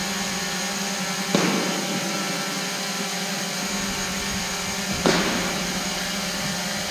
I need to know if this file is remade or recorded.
recorded